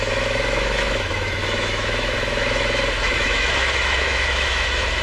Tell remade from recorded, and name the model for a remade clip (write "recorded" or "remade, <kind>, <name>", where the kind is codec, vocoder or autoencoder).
remade, autoencoder, DAC-VAE